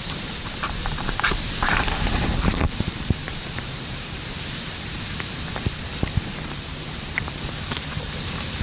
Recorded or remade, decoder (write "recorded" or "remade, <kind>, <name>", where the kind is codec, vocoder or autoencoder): remade, vocoder, BigVGAN v2